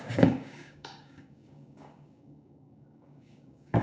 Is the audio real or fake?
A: fake